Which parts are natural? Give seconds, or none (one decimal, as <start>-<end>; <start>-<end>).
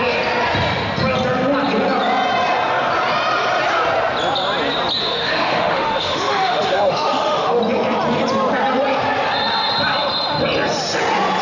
0.0-5.0; 7.6-11.4